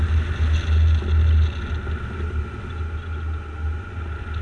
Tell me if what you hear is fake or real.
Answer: real